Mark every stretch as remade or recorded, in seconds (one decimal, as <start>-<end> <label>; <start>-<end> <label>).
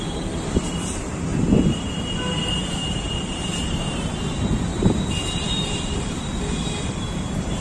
0.0-1.3 remade; 1.3-2.5 recorded; 2.5-7.6 remade